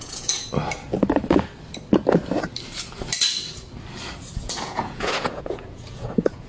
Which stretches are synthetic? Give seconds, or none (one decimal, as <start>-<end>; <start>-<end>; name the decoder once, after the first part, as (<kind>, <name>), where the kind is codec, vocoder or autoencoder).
0.0-0.5 (vocoder, Vocos); 4.4-6.5

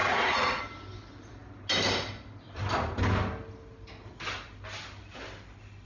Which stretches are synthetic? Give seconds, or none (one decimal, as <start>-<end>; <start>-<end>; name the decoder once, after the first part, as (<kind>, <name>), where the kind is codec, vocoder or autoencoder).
0.0-0.6 (vocoder, Vocos)

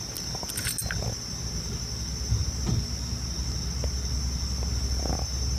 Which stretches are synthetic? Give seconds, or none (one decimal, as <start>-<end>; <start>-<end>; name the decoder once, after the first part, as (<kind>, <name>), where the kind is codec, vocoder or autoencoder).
none

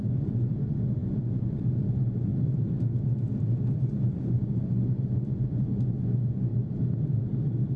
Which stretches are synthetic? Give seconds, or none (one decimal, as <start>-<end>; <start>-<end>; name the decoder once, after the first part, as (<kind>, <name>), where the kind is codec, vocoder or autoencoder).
0.0-2.3 (vocoder, Vocos); 3.8-6.5

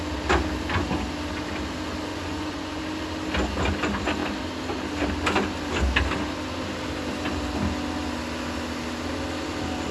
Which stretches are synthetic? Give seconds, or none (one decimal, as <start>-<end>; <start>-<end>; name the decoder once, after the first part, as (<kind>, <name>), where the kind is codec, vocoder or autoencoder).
2.1-2.8 (vocoder, Vocos)

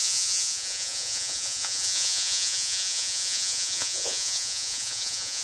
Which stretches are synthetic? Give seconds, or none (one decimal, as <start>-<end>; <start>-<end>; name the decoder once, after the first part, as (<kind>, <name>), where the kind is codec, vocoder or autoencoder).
0.0-5.4 (vocoder, Vocos)

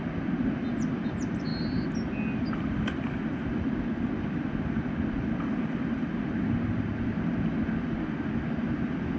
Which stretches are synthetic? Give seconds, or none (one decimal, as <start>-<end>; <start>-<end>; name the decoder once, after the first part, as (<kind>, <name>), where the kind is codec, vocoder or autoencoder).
none

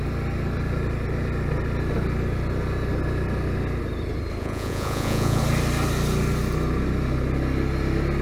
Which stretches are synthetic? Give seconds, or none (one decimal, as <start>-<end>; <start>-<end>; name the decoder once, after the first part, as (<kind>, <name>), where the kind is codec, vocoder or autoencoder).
4.4-5.4 (vocoder, Vocos)